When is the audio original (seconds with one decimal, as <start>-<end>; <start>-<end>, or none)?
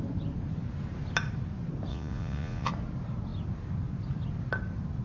0.0-1.9; 2.7-5.0